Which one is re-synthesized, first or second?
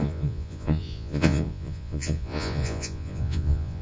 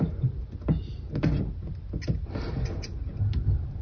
first